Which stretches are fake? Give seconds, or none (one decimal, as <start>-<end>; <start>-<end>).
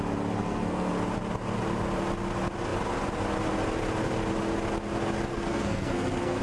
0.4-0.9; 5.3-6.4